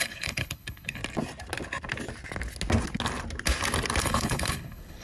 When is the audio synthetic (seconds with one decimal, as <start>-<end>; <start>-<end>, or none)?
0.0-1.0; 4.0-5.0